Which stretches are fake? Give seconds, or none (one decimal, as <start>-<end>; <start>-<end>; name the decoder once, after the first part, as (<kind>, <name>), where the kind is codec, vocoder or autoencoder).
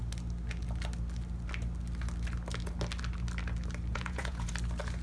3.9-4.5 (vocoder, Vocos)